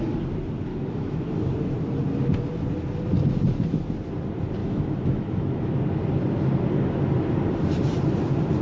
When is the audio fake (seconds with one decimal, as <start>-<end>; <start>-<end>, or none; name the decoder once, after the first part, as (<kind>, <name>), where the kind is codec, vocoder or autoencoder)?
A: 0.7-1.3 (autoencoder, DAC-VAE); 4.6-5.8